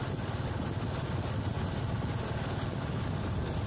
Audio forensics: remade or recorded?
recorded